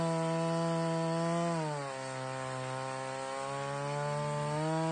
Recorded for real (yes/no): yes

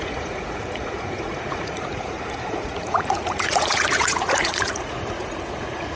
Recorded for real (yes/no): no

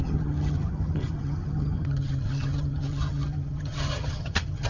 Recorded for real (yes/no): no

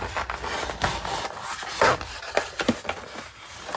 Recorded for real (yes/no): yes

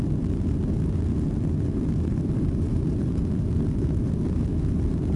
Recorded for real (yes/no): yes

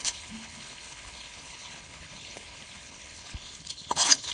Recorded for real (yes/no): no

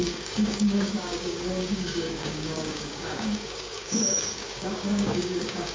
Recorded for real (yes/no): no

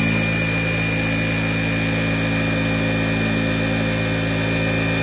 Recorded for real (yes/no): yes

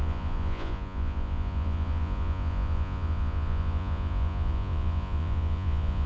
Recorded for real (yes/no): no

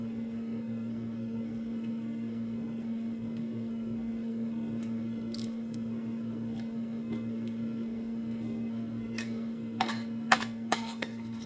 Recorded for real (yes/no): no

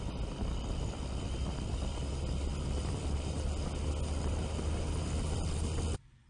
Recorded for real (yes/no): yes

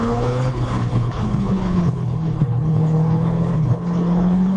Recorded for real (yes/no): no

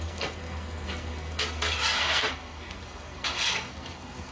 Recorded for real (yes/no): no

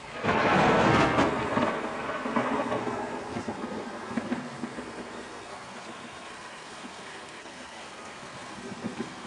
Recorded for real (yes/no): no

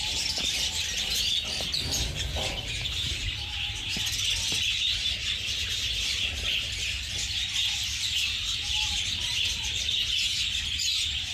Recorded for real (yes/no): yes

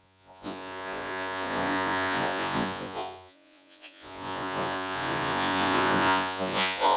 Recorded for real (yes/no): no